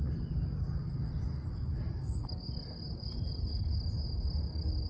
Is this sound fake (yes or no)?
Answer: no